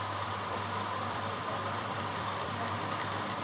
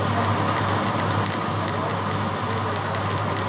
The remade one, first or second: first